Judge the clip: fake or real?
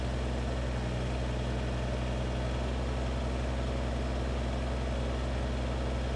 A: real